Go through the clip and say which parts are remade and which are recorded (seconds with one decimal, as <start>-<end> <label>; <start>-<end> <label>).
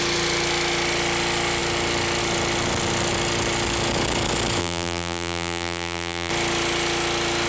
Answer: 0.0-4.6 recorded; 4.6-6.3 remade; 6.3-7.5 recorded